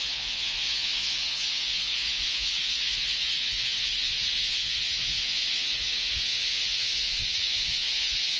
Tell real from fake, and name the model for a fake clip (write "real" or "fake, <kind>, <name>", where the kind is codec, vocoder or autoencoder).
fake, vocoder, Vocos